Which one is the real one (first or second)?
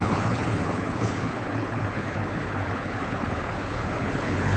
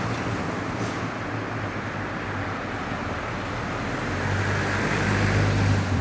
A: second